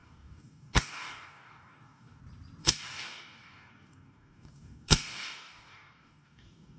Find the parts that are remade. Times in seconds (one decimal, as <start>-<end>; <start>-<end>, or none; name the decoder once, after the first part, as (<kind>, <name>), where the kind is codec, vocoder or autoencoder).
0.0-2.2 (codec, DAC); 2.6-6.8